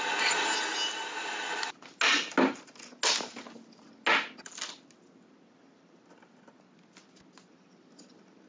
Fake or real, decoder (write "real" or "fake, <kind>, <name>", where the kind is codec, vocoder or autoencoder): real